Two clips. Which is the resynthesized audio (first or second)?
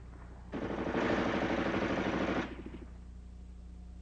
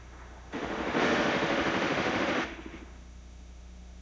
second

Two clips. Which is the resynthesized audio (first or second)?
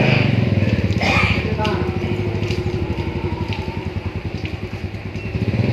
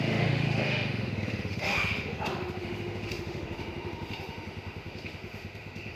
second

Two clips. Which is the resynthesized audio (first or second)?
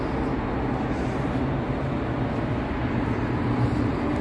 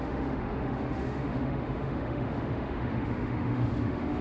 second